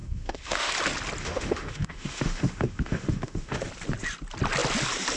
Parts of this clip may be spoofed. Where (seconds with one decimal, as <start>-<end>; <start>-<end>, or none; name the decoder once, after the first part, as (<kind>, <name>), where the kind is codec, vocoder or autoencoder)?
0.0-0.7 (autoencoder, DAC-VAE); 1.2-3.7